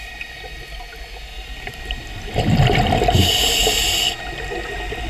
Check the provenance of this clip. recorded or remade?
recorded